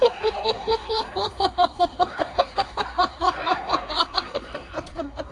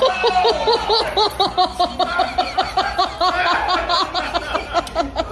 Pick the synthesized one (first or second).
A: first